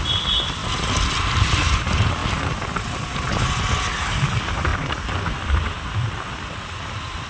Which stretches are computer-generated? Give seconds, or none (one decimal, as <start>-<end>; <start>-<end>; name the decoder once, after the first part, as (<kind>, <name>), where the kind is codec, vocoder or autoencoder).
none